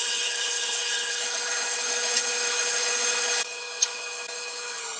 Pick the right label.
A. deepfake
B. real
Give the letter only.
A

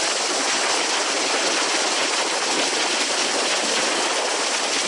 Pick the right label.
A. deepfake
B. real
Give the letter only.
B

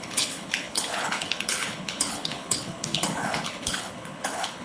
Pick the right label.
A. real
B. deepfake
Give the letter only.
B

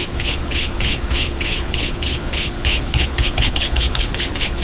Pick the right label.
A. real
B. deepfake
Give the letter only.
B